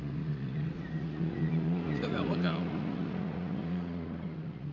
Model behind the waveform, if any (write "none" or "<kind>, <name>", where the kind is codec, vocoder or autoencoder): vocoder, Vocos